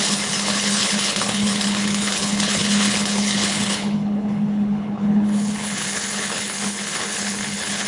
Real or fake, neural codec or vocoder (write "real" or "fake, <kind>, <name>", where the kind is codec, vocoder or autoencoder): fake, codec, HILCodec